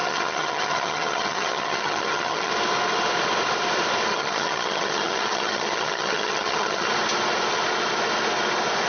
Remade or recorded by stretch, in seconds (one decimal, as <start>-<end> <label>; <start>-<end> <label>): 0.0-2.5 remade; 2.5-4.1 recorded; 4.1-6.9 remade; 6.9-8.9 recorded